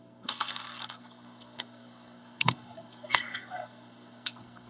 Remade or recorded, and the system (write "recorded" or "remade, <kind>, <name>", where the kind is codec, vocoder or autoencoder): remade, codec, SNAC